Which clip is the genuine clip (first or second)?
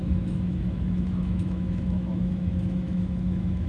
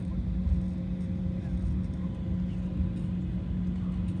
second